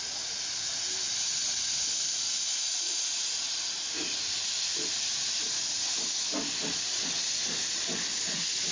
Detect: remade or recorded recorded